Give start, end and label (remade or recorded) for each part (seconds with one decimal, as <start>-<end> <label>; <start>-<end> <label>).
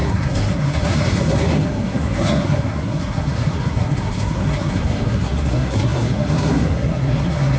0.0-7.6 remade